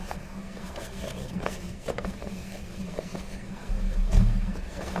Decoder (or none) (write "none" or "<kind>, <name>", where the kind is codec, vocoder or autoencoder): codec, SNAC